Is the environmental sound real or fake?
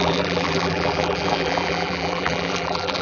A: fake